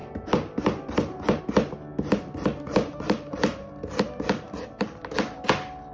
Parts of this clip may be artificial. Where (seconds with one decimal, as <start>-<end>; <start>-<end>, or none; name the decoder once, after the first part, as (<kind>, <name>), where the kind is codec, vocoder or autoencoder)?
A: 0.0-1.4 (vocoder, BigVGAN v2); 1.9-5.4